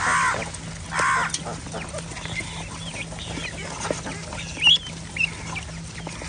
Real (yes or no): yes